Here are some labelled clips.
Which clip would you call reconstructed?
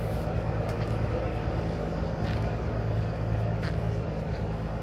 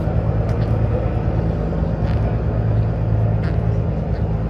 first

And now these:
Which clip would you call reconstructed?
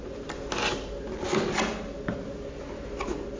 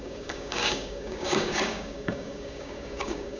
second